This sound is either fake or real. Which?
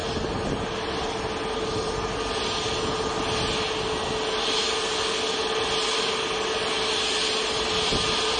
real